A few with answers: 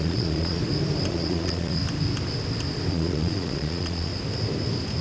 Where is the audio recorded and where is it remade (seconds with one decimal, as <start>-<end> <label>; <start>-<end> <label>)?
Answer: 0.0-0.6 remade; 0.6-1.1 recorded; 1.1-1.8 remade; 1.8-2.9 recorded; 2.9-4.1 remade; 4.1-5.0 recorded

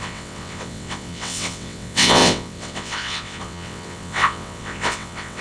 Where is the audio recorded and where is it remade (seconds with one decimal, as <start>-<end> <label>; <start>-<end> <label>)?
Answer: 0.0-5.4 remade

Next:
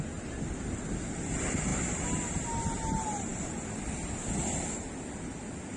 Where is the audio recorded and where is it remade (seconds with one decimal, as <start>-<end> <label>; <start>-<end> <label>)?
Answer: 0.0-5.8 recorded

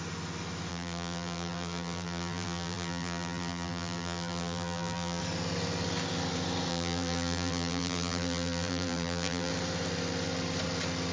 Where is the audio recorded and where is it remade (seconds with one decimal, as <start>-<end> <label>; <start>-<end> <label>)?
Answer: 0.0-0.7 recorded; 0.7-5.2 remade; 5.2-6.7 recorded; 6.7-9.5 remade; 9.5-11.1 recorded

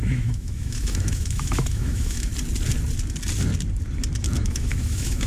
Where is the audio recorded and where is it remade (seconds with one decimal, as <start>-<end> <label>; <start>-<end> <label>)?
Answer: 0.0-2.3 remade; 2.3-4.4 recorded; 4.4-5.3 remade

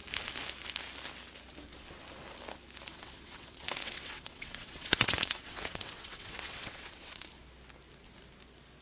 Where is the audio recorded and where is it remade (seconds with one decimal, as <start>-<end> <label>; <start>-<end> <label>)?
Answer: 0.0-2.9 recorded; 2.9-7.3 remade; 7.3-8.8 recorded